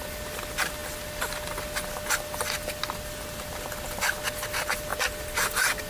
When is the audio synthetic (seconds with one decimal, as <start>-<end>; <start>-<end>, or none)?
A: none

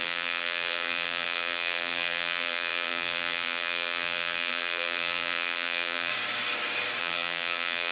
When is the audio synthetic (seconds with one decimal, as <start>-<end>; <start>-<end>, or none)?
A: 0.0-6.1; 7.0-7.9

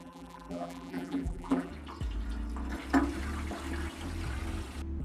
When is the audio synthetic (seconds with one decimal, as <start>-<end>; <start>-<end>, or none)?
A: 0.0-1.7

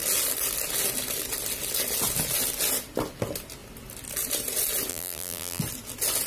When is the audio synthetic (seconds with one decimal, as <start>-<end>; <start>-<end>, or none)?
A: 4.9-5.6

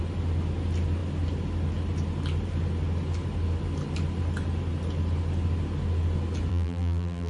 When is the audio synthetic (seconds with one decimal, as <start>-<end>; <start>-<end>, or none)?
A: 6.5-7.3

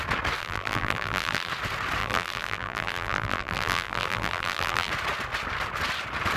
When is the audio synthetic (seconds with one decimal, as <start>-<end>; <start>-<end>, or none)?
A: 0.4-1.5; 2.0-4.9

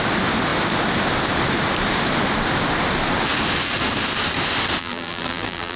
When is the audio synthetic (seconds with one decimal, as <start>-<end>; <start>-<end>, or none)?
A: 4.8-5.8

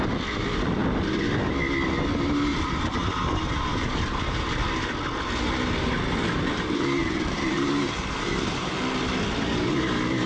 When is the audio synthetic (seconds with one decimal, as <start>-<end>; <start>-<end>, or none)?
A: 2.5-4.2; 7.0-8.7